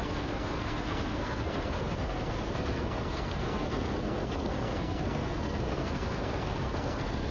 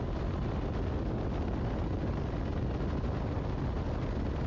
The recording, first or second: second